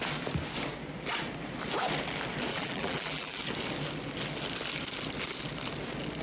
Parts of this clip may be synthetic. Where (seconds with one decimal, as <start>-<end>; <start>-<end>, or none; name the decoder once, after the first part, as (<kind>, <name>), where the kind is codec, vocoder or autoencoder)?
2.5-3.4 (vocoder, BigVGAN v2)